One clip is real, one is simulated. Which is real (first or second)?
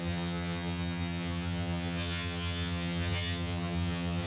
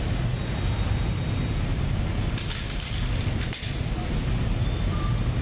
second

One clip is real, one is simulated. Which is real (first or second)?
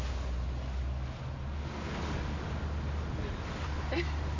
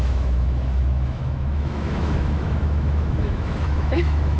first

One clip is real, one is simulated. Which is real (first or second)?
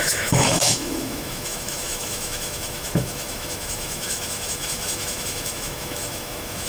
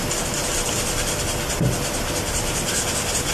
second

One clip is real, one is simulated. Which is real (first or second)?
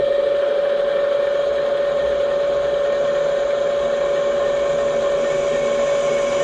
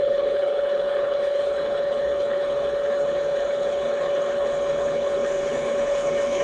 first